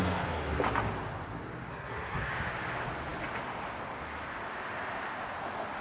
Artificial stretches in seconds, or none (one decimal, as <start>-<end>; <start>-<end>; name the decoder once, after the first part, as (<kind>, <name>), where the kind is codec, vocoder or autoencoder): 1.7-2.3 (codec, SNAC)